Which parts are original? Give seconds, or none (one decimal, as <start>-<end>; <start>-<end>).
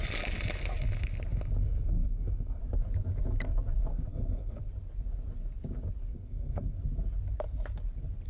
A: 0.0-1.6; 2.6-3.9; 4.7-6.1; 6.8-8.3